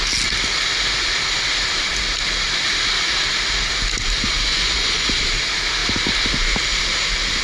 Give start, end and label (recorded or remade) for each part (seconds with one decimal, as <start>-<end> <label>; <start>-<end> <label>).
0.0-4.5 recorded; 4.5-5.2 remade; 5.2-7.4 recorded